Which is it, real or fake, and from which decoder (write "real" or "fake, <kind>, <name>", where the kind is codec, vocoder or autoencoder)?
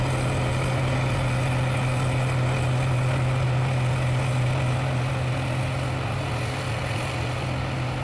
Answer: real